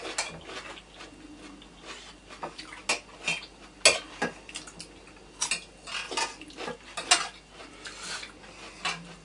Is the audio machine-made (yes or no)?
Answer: no